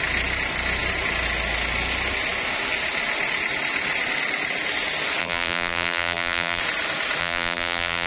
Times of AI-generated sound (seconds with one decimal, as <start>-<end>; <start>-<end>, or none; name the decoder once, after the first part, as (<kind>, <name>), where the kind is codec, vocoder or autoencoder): 5.2-6.6 (vocoder, BigVGAN v2); 7.2-8.1